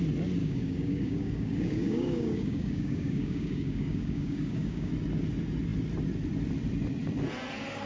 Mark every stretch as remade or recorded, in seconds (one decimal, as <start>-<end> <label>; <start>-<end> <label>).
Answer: 0.0-0.4 recorded; 0.4-4.9 remade; 4.9-7.9 recorded